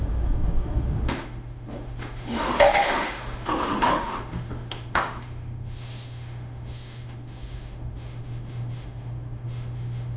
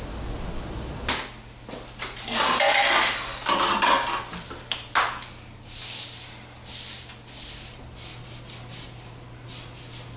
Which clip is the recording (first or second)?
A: second